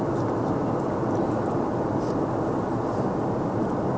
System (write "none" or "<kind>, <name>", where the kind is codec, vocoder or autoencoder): none